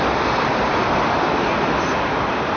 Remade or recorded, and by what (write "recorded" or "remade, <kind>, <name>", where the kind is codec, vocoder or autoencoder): remade, vocoder, BigVGAN v2